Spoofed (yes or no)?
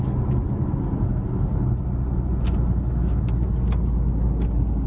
no